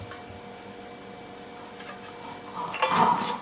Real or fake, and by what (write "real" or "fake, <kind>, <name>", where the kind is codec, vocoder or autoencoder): real